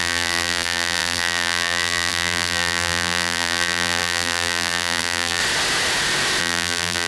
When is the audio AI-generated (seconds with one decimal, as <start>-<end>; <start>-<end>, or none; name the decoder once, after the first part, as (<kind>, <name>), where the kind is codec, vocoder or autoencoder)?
0.0-5.4 (vocoder, BigVGAN v2); 6.4-7.1